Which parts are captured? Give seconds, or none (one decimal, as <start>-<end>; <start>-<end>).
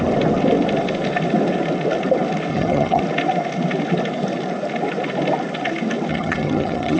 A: 0.0-2.5; 3.0-6.1